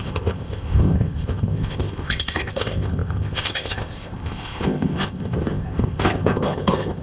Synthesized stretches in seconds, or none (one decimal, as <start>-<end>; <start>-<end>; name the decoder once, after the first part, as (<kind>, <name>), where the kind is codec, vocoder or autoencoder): 0.0-7.0 (codec, ZipCodec)